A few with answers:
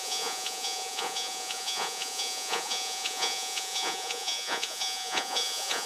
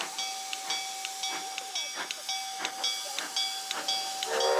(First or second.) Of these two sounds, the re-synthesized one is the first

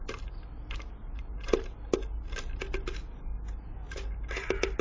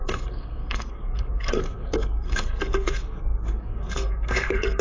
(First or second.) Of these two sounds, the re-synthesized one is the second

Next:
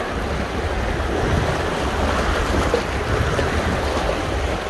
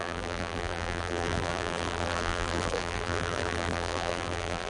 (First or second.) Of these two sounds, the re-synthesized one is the second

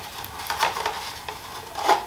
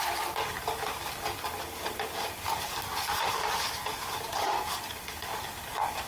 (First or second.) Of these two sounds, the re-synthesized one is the second